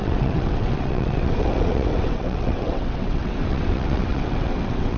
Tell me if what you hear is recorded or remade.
remade